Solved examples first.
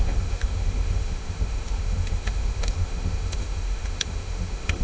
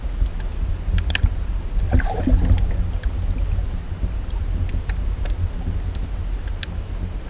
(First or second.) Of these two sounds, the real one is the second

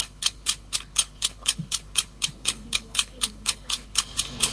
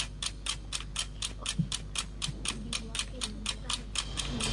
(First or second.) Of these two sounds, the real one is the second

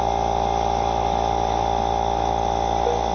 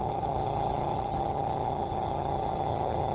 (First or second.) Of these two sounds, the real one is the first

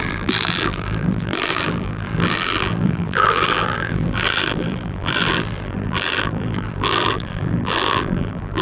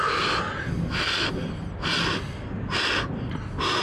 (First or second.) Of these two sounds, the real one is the second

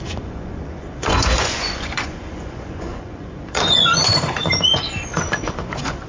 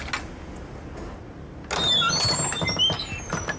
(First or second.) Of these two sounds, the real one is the second